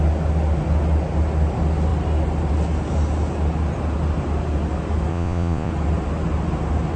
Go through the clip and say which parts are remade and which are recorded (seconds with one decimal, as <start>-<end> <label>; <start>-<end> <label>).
0.0-5.1 recorded; 5.1-5.7 remade; 5.7-7.0 recorded